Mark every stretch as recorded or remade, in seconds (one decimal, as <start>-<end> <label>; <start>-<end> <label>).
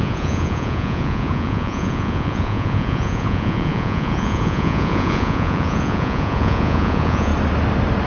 0.0-7.3 remade; 7.3-8.1 recorded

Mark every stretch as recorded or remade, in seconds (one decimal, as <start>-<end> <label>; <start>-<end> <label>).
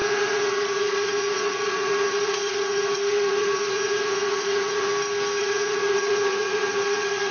0.0-4.9 remade; 4.9-5.4 recorded; 5.4-7.3 remade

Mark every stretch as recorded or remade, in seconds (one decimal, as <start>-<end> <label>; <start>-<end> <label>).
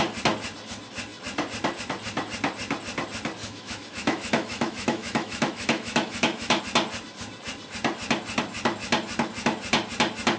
0.0-3.4 recorded; 3.4-6.6 remade; 6.6-10.4 recorded